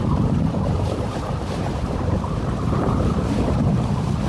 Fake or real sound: fake